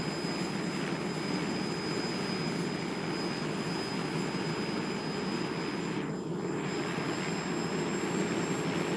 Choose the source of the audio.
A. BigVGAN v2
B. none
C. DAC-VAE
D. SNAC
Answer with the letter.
B